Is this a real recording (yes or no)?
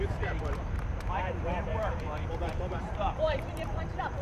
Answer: no